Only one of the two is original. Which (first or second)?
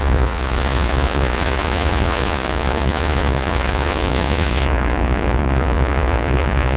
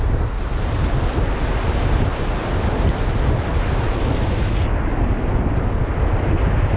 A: second